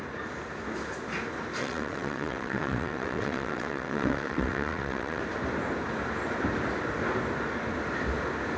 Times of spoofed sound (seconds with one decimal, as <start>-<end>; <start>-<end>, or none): 1.6-5.2